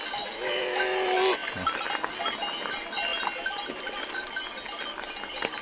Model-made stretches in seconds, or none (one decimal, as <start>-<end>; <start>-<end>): none